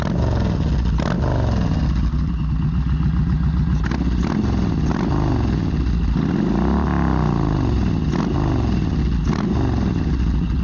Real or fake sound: real